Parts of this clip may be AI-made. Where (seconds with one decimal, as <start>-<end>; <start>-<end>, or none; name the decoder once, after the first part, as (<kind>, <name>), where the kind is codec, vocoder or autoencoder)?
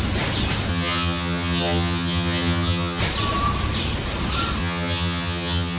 0.7-3.0 (vocoder, HiFi-GAN); 4.6-5.8